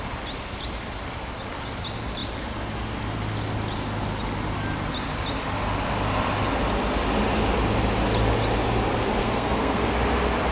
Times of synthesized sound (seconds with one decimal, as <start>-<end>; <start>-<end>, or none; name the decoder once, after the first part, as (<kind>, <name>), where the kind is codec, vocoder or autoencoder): 9.2-9.9 (codec, SNAC)